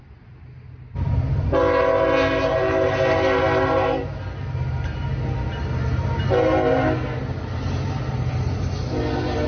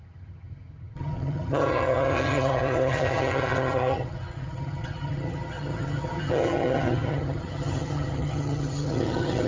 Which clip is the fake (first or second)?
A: second